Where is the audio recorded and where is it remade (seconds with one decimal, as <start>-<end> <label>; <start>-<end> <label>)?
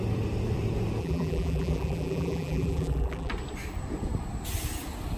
0.0-1.0 recorded; 1.0-3.3 remade; 3.3-5.2 recorded